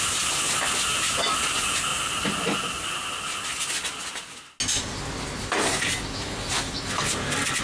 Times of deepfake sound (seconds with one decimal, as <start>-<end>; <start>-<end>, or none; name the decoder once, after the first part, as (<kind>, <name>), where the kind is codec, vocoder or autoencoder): none